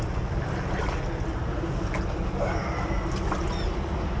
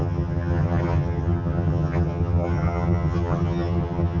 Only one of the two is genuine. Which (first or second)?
first